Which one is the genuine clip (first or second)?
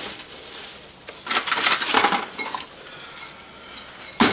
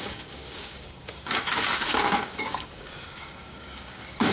first